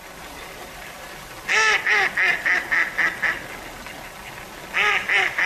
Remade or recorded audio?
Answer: recorded